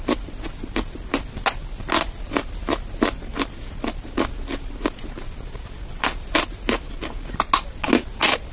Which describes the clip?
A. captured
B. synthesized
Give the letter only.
A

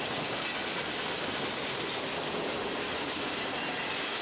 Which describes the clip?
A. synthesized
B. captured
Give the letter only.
B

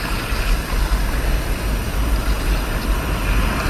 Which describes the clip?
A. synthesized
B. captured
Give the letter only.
B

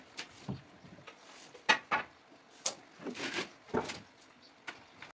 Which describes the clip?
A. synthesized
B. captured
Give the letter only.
B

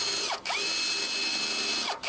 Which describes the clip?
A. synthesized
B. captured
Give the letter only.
B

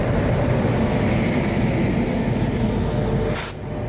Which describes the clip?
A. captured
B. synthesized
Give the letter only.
A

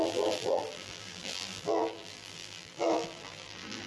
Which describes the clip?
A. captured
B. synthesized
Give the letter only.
B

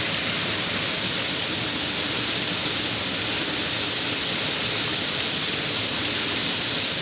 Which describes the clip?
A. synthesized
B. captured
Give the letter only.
B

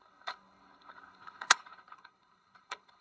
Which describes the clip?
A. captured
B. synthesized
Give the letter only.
B